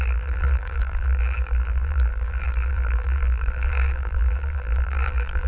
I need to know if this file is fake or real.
fake